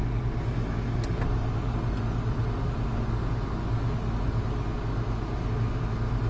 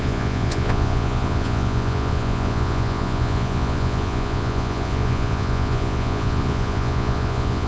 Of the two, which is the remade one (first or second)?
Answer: second